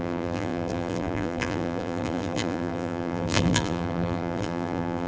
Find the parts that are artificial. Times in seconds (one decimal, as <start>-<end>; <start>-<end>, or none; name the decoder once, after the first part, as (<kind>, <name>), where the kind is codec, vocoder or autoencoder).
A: 0.0-5.1 (vocoder, BigVGAN v2)